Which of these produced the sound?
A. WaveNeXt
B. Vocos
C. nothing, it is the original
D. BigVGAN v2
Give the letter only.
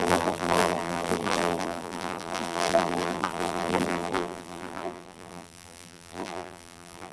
D